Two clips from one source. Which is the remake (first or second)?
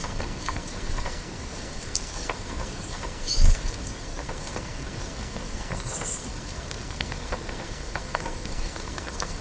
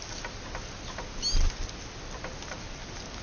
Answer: first